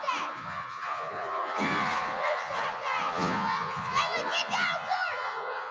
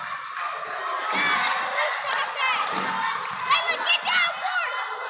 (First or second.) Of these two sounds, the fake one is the first